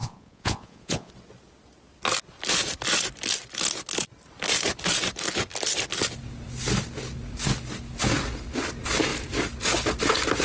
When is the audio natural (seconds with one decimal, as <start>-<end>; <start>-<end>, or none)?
1.1-10.4